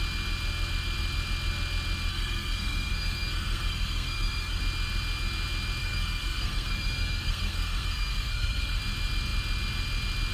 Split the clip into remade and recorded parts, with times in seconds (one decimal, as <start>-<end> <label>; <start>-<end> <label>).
0.0-2.1 recorded; 2.1-4.6 remade; 4.6-5.8 recorded; 5.8-8.8 remade; 8.8-10.3 recorded